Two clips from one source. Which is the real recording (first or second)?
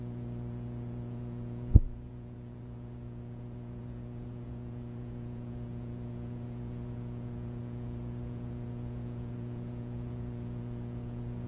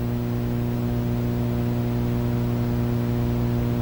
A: second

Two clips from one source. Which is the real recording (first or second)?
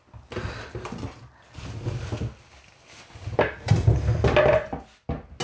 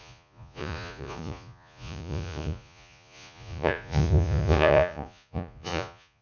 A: first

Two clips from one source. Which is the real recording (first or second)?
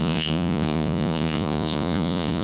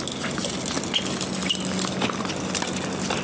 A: second